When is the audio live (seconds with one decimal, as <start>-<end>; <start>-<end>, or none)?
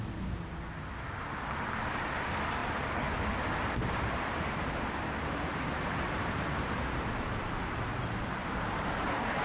0.0-9.4